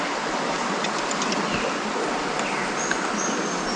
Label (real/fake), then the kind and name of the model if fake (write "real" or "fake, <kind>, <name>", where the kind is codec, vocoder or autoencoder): real